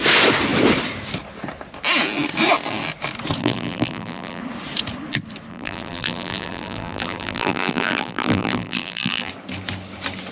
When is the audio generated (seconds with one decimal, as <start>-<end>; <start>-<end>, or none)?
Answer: 3.4-4.4; 5.5-9.3